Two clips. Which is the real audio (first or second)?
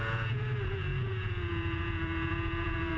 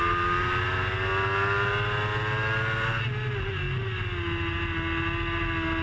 second